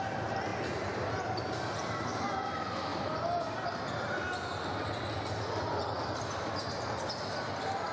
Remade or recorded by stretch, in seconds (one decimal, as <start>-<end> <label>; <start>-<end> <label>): 0.0-7.9 recorded